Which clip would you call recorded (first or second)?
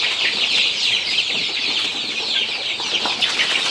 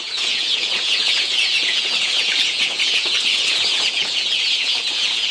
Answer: first